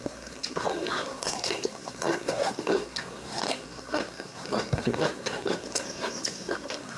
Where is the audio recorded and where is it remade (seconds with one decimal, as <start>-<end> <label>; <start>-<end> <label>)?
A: 0.0-7.0 remade

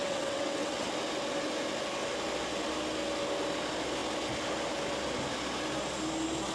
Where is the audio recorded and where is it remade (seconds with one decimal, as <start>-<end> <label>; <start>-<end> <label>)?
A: 0.0-0.9 remade; 0.9-6.5 recorded